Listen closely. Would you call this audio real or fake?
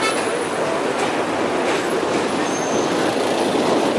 real